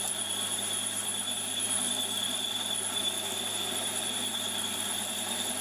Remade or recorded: remade